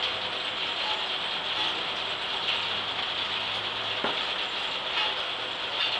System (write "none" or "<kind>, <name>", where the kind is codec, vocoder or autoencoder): none